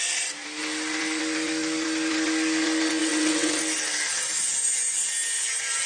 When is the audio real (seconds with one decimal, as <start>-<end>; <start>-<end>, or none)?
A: 0.0-3.0; 3.6-5.9